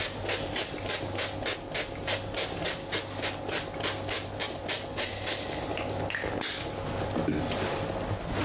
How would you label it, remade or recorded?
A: recorded